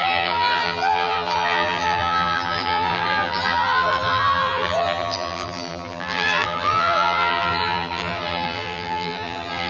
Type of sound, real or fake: fake